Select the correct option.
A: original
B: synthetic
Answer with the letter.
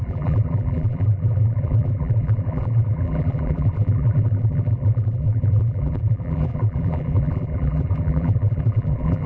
B